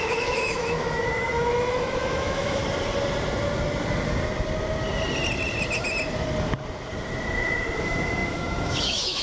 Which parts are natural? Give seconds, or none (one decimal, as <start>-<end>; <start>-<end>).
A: 2.6-7.8